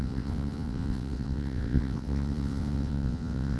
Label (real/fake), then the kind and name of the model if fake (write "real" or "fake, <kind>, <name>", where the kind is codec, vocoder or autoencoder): fake, vocoder, WaveNeXt